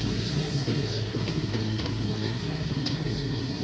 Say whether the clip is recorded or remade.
remade